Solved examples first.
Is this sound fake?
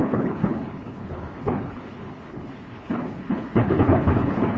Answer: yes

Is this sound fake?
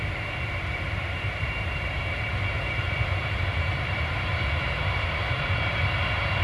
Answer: yes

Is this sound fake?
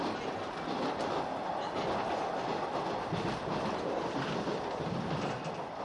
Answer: no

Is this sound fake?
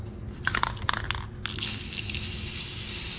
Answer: no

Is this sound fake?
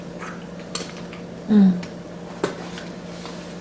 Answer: no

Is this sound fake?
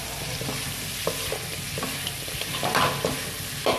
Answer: no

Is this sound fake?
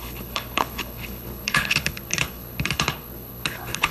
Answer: yes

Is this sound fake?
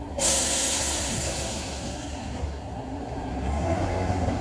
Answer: yes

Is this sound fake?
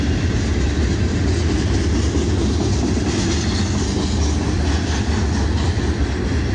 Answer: no